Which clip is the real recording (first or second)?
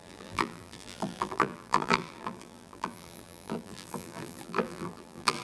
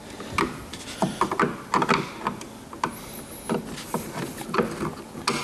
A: second